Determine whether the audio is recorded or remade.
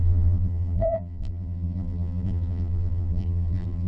remade